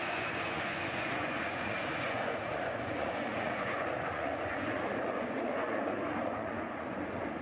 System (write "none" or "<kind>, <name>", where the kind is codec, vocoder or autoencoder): vocoder, Vocos